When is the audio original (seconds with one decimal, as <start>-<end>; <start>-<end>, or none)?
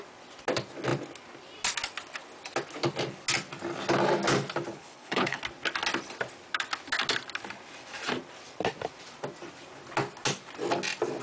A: 0.0-4.7; 5.4-11.2